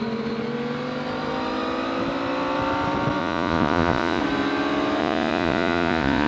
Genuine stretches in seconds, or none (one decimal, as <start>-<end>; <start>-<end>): 0.0-3.2; 4.2-5.0